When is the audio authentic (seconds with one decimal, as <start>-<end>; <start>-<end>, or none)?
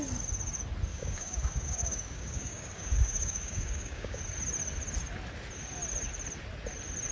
0.0-0.9; 4.2-7.1